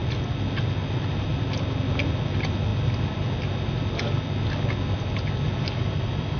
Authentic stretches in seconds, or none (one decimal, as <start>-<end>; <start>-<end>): 0.0-6.4

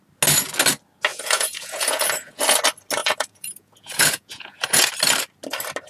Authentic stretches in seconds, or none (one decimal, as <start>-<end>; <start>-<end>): 0.0-1.1; 2.4-3.0; 4.9-5.9

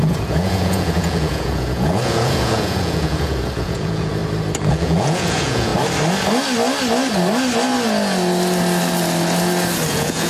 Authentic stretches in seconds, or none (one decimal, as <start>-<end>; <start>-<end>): 4.2-4.7; 5.7-9.9

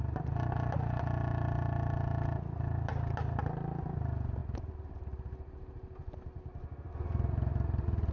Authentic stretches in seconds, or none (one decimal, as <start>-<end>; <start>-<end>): 0.0-8.1

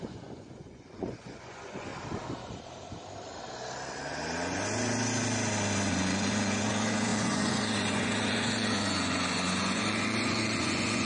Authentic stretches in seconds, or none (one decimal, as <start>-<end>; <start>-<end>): 1.9-5.9

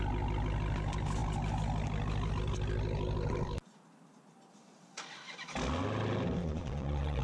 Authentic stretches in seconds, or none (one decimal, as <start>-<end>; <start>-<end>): 0.0-6.4

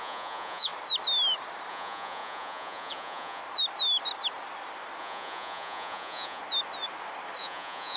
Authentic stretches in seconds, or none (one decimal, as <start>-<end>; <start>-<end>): 0.7-1.7; 3.4-5.0; 6.4-7.4